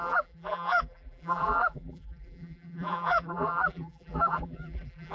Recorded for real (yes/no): no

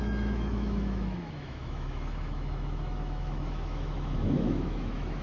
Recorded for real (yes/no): no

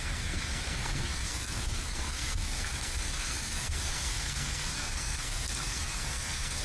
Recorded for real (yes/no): no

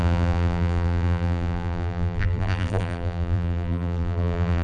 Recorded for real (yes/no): no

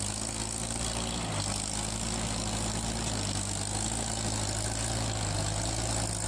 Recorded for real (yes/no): yes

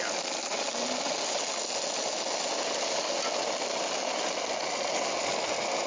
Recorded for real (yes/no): yes